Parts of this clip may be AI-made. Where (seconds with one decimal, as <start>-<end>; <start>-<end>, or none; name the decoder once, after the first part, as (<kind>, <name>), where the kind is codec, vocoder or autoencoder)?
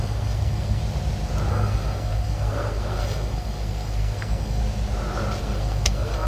0.0-0.8 (codec, SNAC); 1.5-4.6; 5.4-6.3